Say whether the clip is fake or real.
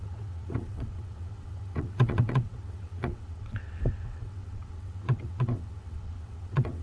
fake